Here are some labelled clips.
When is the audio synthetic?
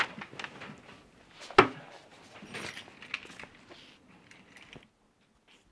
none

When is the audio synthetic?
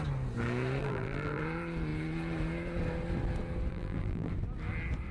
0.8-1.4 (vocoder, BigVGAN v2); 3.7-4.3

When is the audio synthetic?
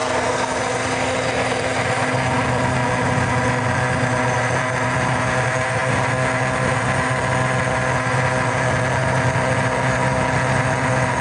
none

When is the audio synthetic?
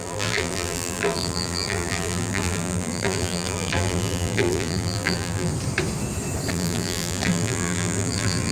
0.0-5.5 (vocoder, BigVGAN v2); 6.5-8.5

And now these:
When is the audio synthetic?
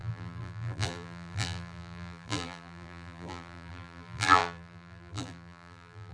0.0-6.1 (vocoder, BigVGAN v2)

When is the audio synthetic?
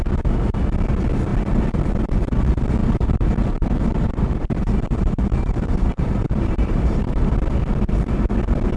2.8-7.3 (vocoder, BigVGAN v2)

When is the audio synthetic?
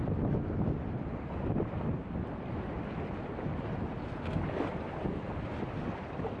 none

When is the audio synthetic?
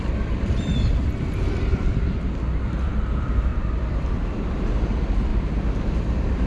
0.0-5.3 (vocoder, BigVGAN v2); 5.9-6.5